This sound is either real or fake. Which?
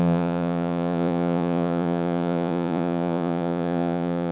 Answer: fake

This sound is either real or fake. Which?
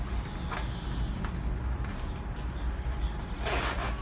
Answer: real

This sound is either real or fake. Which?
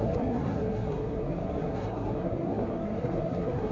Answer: fake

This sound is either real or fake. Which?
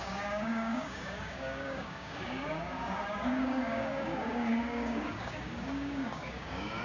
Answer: fake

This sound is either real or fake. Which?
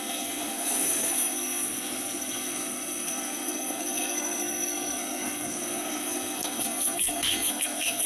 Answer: fake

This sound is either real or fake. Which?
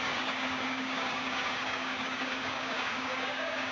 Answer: fake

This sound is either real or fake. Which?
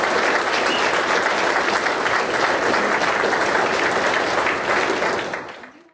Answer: real